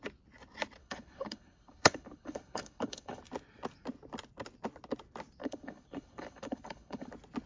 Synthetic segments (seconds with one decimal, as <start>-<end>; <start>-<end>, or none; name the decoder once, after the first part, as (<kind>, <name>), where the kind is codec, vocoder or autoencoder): 0.8-3.2 (codec, HILCodec); 5.4-7.1